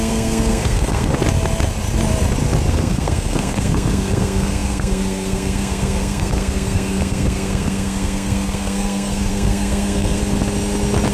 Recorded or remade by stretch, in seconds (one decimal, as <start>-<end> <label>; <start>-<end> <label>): 0.0-1.1 remade; 1.1-2.7 recorded; 2.7-10.2 remade; 10.2-11.1 recorded